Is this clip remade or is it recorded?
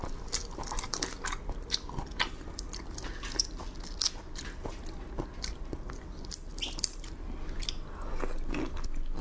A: recorded